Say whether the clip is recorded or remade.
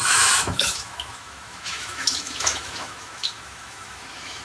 remade